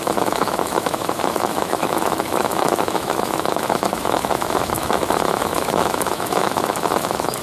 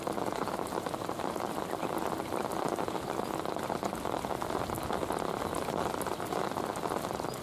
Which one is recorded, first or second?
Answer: second